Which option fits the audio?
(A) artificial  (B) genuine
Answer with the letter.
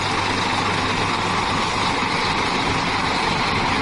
B